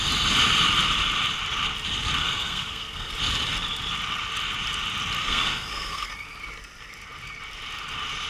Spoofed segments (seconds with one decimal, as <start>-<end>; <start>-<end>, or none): 2.2-3.1; 5.2-6.1